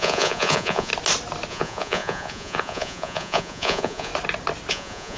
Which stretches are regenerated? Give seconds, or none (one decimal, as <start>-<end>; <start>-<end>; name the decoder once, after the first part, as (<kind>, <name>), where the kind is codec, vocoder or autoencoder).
0.0-0.9 (vocoder, Vocos); 1.5-4.1; 4.7-5.2